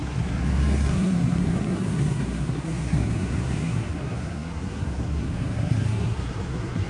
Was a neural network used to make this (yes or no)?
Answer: yes